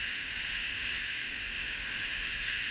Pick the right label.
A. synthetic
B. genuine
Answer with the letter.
A